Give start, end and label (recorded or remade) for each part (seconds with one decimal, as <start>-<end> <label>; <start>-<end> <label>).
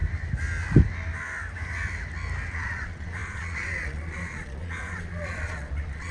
0.0-2.5 recorded; 2.5-6.1 remade